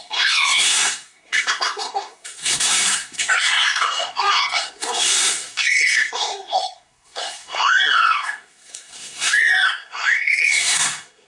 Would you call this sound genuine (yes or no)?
no